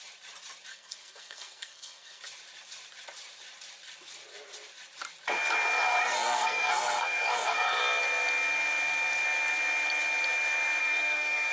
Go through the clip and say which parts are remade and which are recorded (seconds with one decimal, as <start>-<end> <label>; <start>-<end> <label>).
0.0-0.7 recorded; 0.7-2.2 remade; 2.2-6.0 recorded; 6.0-7.8 remade; 7.8-10.8 recorded; 10.8-11.5 remade